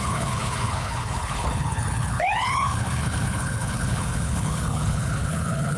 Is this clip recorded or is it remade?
remade